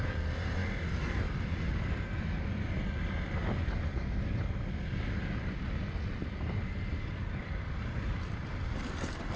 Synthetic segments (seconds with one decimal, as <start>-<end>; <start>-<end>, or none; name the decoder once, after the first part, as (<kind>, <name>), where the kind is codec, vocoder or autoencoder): none

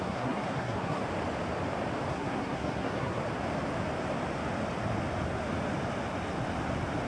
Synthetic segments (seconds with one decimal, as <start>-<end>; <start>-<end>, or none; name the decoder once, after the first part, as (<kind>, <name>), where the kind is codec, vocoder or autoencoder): 0.0-1.0 (codec, SNAC); 2.1-3.2

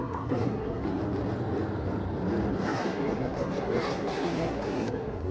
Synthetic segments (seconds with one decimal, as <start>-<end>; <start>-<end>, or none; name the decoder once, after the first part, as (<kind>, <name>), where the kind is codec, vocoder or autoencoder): 0.0-1.0 (codec, SNAC); 2.5-5.3

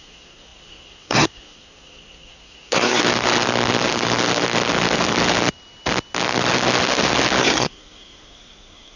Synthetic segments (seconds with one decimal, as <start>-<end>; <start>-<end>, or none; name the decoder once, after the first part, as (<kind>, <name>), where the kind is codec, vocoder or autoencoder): 0.0-3.0 (codec, SNAC); 7.4-9.0

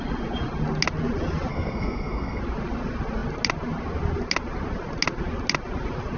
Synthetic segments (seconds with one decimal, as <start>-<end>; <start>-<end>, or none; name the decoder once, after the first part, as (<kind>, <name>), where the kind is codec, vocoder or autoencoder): 1.5-2.4 (codec, SNAC)

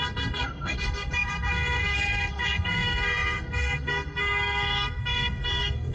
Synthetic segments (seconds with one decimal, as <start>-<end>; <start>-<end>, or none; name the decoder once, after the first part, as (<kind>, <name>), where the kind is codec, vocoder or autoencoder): 0.0-5.9 (codec, SNAC)

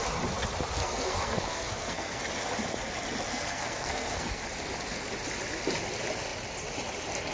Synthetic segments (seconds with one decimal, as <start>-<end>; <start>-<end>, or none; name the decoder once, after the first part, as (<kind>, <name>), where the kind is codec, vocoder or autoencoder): 0.8-2.2 (codec, SNAC); 3.3-4.4